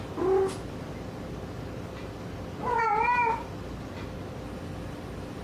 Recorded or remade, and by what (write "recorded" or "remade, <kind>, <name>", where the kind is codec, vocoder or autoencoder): recorded